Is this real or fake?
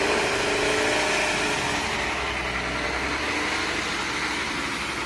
real